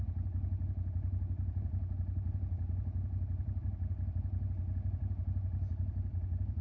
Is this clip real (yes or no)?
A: yes